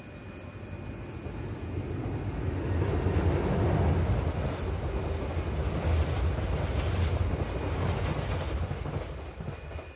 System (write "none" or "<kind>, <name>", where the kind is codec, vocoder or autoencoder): none